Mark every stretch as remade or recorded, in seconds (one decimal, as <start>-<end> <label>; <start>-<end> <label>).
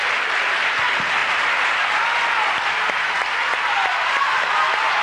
0.0-5.0 recorded